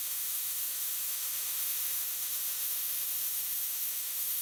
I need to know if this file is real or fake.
fake